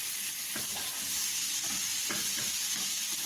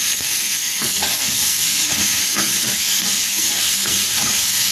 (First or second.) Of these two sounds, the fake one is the second